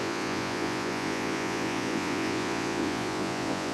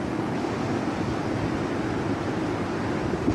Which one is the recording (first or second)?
second